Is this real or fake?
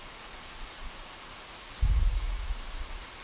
fake